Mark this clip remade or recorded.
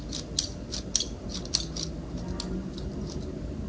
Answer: recorded